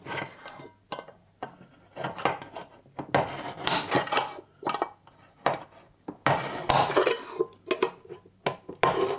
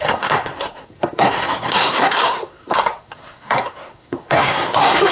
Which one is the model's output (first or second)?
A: second